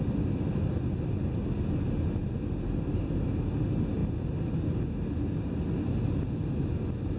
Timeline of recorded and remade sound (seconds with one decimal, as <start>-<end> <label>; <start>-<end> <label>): 0.0-7.2 recorded